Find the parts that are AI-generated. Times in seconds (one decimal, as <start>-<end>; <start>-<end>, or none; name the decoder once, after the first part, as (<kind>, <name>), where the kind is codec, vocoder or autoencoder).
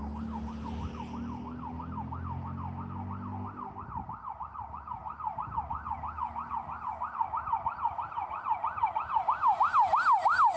none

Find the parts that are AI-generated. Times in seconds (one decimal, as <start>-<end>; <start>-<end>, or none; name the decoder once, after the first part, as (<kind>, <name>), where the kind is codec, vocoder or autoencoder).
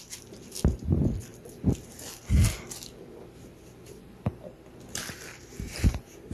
none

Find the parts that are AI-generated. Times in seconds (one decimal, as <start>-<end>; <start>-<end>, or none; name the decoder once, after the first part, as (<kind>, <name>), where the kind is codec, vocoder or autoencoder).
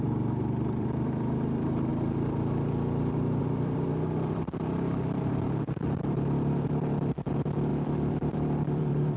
0.0-1.9 (vocoder, BigVGAN v2); 3.4-7.7; 8.3-9.2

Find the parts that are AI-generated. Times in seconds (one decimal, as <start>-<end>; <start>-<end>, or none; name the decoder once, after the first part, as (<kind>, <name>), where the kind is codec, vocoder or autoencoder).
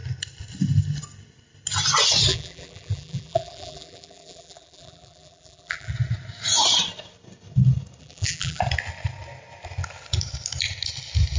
2.3-5.9 (vocoder, BigVGAN v2); 8.0-8.6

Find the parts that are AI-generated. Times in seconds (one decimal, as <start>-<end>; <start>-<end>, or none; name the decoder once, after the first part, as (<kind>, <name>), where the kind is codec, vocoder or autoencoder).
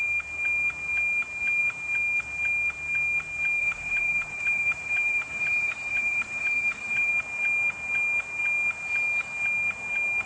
3.6-7.1 (vocoder, BigVGAN v2)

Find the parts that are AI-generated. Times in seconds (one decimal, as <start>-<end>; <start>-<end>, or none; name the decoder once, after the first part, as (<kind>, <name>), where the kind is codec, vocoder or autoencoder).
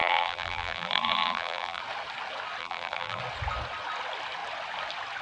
0.0-1.8 (vocoder, BigVGAN v2); 2.6-3.2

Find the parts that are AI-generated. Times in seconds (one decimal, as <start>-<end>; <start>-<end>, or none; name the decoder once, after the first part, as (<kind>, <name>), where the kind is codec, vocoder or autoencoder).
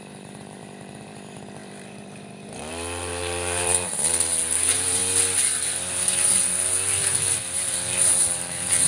0.0-5.0 (vocoder, BigVGAN v2); 8.0-8.9